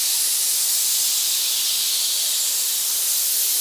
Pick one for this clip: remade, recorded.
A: recorded